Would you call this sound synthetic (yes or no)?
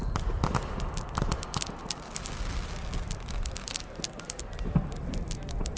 no